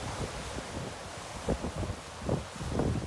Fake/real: real